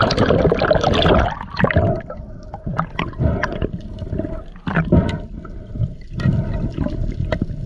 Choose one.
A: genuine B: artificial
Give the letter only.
A